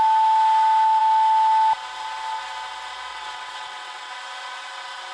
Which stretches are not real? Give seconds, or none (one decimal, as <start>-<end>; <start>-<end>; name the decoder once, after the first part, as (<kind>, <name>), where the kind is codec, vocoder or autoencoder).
3.1-4.1 (vocoder, WaveNeXt)